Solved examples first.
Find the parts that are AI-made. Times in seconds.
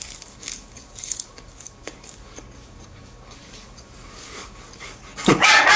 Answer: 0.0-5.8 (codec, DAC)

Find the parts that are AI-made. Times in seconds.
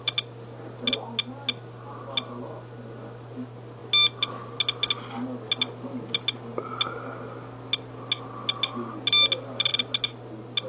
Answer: none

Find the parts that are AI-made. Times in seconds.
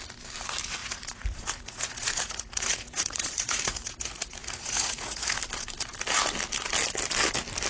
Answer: 0.8-5.4 (vocoder, Vocos)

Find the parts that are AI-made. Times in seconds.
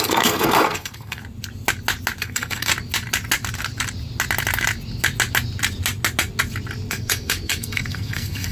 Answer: 0.0-1.2 (codec, SNAC); 2.2-2.7; 6.9-8.5